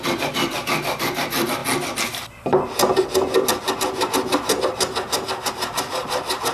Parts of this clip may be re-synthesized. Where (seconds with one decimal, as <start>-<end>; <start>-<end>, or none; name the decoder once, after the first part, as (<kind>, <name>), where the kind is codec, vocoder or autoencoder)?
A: 0.0-1.6 (vocoder, BigVGAN v2); 5.5-6.5